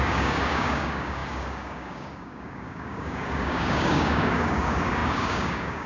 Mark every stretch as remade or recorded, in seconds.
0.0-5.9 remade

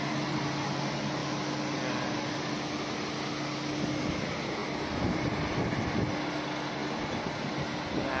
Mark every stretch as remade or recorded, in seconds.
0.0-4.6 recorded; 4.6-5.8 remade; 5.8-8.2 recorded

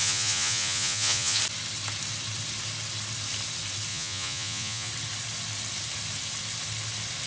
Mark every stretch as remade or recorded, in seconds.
0.0-1.4 remade; 1.4-3.9 recorded; 3.9-4.9 remade; 4.9-7.3 recorded

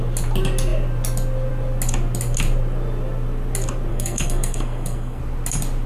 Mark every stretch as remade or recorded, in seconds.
0.0-3.9 recorded; 3.9-5.2 remade; 5.2-5.9 recorded